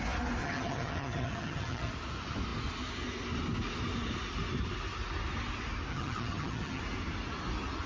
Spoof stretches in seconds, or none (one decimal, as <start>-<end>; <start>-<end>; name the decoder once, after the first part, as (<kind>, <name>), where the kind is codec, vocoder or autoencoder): 0.4-1.9 (vocoder, HiFi-GAN); 5.9-6.8